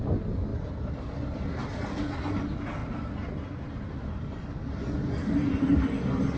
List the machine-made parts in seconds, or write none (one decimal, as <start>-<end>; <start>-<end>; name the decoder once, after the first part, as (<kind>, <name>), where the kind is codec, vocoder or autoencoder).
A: none